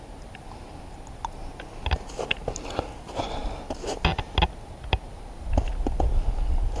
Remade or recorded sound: recorded